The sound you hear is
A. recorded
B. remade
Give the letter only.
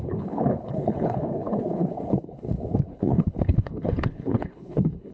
B